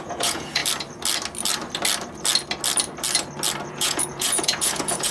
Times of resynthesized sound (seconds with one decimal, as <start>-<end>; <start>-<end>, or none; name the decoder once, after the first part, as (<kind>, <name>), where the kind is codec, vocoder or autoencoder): 0.0-0.6 (vocoder, Vocos); 3.7-5.1